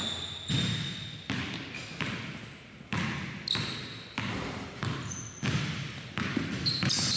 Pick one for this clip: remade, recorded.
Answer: recorded